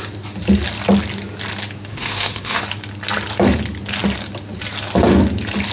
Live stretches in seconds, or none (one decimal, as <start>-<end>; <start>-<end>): 0.0-1.9; 2.6-5.7